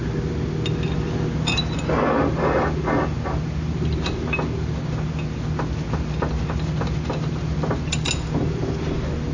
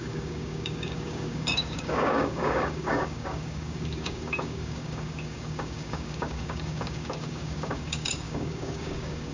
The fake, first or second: second